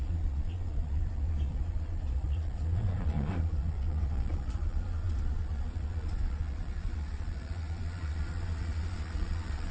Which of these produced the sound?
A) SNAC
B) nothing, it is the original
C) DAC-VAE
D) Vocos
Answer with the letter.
D